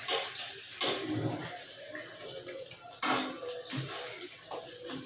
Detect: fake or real real